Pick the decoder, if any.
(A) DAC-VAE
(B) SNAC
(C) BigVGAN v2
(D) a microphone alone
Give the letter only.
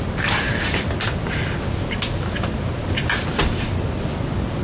D